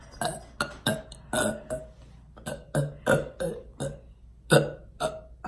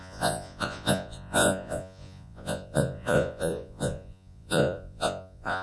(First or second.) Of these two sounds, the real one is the first